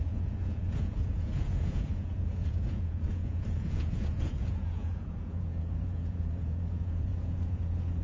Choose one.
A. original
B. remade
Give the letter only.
B